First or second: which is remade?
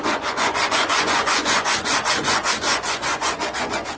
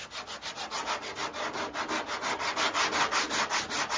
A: first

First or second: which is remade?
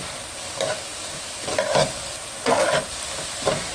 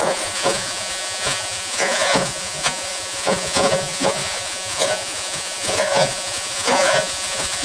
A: second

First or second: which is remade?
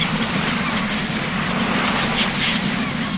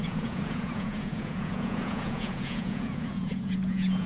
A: second